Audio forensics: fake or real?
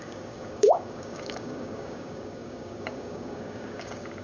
fake